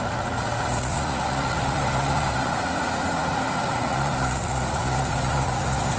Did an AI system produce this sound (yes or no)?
yes